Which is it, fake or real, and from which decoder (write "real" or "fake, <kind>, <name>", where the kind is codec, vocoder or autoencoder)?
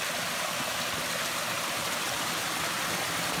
real